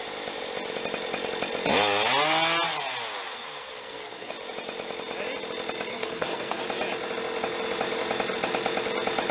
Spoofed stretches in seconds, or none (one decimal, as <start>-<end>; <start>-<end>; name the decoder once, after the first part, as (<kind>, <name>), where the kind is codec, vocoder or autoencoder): 3.3-4.3 (codec, SNAC); 5.9-6.6